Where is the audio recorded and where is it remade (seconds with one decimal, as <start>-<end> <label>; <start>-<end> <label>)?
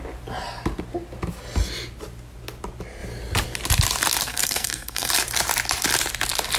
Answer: 0.0-4.3 recorded; 4.3-5.1 remade; 5.1-6.6 recorded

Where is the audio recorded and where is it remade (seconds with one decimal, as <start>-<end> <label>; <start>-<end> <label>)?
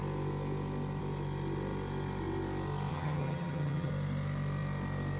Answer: 0.0-2.9 recorded; 2.9-3.9 remade; 3.9-5.2 recorded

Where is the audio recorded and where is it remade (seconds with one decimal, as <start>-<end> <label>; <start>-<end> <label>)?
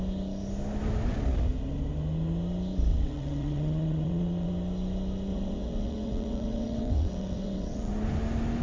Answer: 0.0-2.9 recorded; 2.9-4.5 remade; 4.5-5.3 recorded; 5.3-7.9 remade; 7.9-8.6 recorded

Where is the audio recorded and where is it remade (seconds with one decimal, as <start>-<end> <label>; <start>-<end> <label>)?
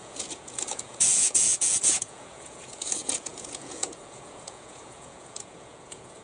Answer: 0.0-6.2 remade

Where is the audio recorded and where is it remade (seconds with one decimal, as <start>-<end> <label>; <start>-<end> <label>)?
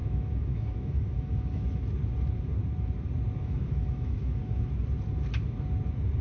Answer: 0.0-1.9 remade; 1.9-3.4 recorded; 3.4-4.7 remade; 4.7-6.2 recorded